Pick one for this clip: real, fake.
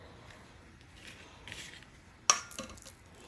real